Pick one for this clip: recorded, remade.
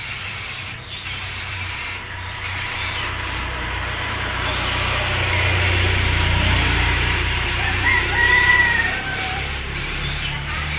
remade